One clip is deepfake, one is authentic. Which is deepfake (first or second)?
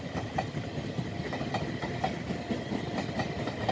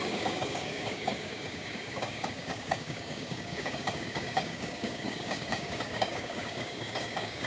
second